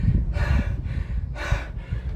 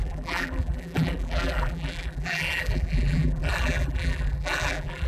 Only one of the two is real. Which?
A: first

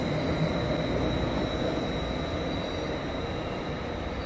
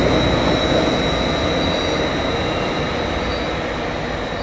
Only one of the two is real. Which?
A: second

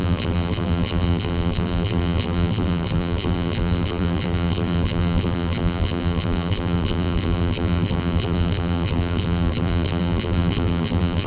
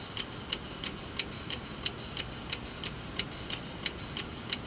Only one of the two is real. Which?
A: second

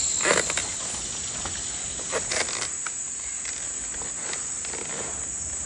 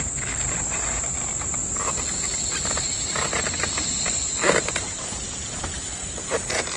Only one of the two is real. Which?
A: first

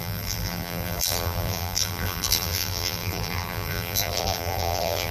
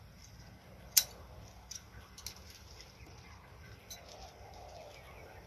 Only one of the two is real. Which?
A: second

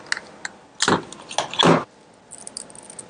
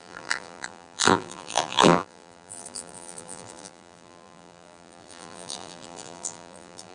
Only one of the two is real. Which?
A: first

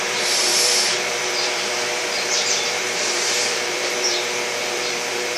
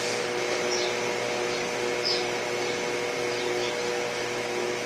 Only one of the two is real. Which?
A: second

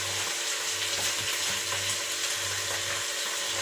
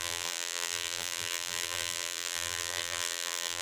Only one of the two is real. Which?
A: first